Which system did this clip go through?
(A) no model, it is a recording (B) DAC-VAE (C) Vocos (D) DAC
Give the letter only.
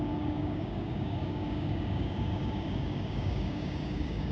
D